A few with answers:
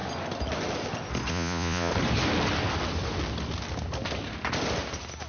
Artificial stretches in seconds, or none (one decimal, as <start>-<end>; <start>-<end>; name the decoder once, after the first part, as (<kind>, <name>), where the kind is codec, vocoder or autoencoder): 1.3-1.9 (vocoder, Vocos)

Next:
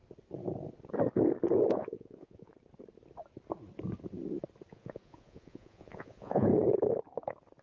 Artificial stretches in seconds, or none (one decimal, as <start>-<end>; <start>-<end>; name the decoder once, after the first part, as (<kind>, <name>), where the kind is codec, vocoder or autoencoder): 1.7-2.5 (vocoder, Vocos); 4.7-6.5

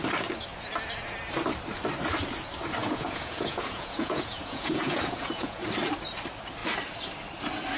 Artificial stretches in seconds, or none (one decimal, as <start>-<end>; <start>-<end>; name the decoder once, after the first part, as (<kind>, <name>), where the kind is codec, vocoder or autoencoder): 2.8-5.6 (vocoder, Vocos)

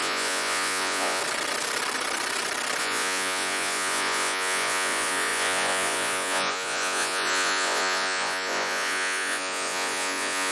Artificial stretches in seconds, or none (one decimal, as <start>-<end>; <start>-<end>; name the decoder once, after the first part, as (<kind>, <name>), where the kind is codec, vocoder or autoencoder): 0.0-1.2 (vocoder, Vocos); 2.8-10.5

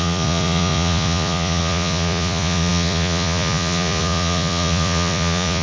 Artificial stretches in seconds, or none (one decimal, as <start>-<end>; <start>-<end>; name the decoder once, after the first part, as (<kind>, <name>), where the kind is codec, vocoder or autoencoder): 0.0-5.6 (vocoder, Vocos)

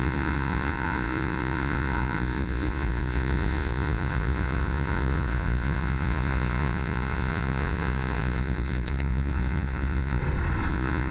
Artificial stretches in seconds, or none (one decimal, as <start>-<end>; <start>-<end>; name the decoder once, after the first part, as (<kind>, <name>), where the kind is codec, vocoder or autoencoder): 0.0-10.2 (vocoder, Vocos); 10.7-11.1

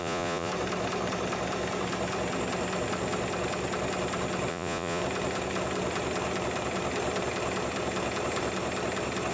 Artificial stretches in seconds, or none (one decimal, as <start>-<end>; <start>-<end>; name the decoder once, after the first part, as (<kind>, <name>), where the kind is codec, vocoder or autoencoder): 0.0-0.5 (vocoder, Vocos); 4.5-5.0